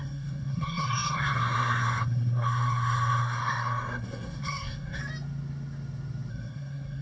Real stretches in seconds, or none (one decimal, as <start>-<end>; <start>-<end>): 5.0-6.3

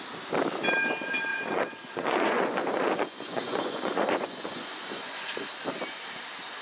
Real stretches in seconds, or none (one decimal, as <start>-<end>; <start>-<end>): 0.0-1.3; 5.3-6.6

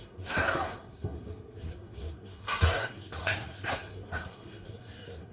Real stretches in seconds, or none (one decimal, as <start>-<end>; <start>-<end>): none

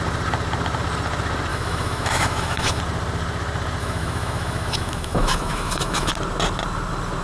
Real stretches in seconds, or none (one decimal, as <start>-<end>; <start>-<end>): 0.0-1.5; 2.8-3.8; 6.1-7.2

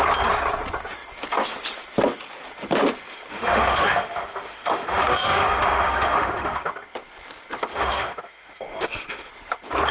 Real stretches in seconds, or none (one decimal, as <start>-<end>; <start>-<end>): 0.0-3.3; 6.7-7.7; 9.3-9.9